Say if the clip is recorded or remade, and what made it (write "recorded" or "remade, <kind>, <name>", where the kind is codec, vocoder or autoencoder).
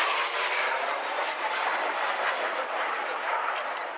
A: recorded